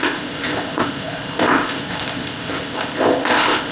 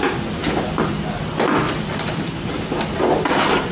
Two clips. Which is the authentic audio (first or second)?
second